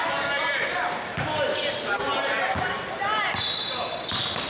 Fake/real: real